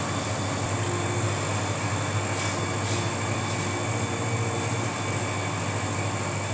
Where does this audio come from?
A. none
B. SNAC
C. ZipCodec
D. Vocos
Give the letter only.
A